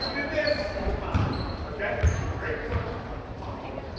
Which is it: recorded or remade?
remade